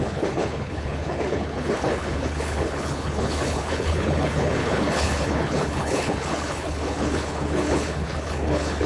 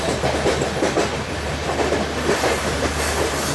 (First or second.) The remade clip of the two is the first